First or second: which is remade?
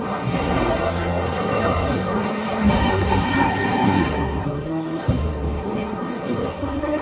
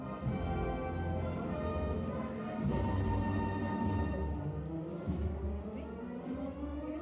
first